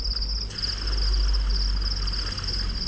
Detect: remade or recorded recorded